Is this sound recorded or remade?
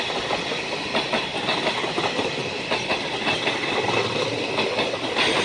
recorded